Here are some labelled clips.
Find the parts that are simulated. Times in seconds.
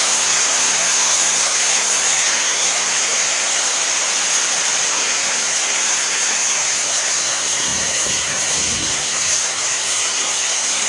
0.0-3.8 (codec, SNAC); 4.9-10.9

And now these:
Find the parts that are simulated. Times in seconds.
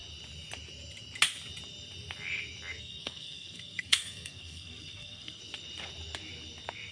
2.8-5.4 (codec, SNAC)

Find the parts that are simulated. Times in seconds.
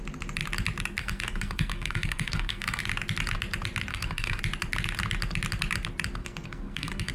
1.0-2.8 (codec, SNAC); 3.9-4.4; 6.2-7.1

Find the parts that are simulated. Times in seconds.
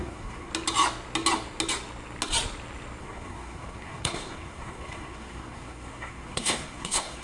0.0-0.5 (codec, SNAC); 3.0-7.2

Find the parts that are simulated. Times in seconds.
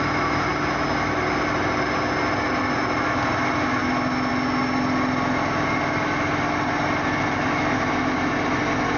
none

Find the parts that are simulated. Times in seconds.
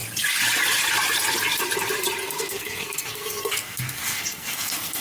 2.2-5.0 (codec, SNAC)